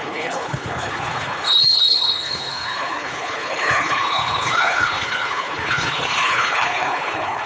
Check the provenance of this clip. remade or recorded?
remade